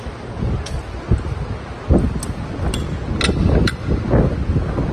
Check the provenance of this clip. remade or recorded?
recorded